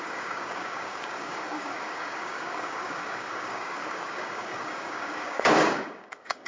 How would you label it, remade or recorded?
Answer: remade